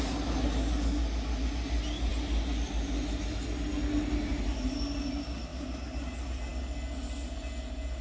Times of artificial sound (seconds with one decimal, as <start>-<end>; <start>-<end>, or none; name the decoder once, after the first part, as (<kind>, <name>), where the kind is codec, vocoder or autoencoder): none